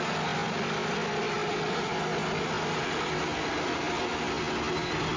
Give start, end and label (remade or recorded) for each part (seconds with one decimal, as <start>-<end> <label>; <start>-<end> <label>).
0.0-5.2 recorded